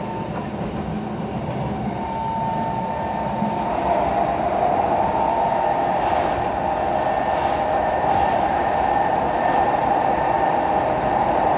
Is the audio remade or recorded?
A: recorded